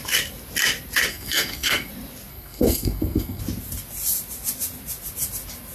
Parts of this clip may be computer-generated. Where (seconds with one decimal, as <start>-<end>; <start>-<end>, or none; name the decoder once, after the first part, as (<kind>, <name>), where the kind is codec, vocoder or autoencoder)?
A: 1.1-1.9 (codec, SNAC); 2.3-3.4